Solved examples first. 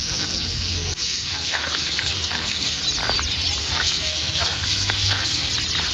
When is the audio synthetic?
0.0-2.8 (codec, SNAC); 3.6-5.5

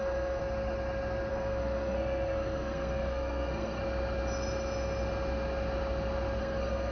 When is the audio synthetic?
0.0-0.4 (codec, SNAC); 1.3-3.8; 6.4-6.9

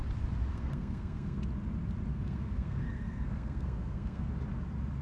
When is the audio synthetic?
0.5-1.4 (codec, SNAC); 2.1-4.3

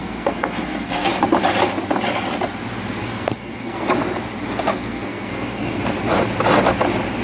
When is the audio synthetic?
0.0-1.2 (codec, SNAC); 3.0-3.9; 4.7-5.8

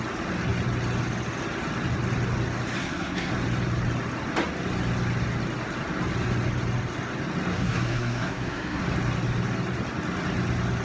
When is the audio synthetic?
2.8-3.3 (codec, SNAC); 7.5-8.8